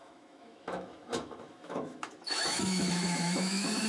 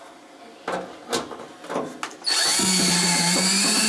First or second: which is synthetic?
first